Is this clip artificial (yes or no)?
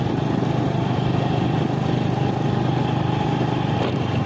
no